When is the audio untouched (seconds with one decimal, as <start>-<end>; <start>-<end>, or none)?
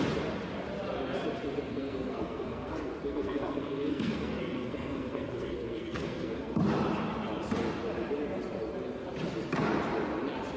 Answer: 0.0-1.7; 6.6-10.6